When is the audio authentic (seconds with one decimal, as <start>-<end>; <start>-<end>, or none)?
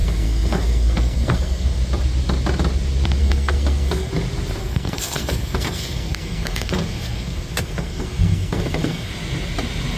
1.8-3.2; 4.1-4.6; 9.1-10.0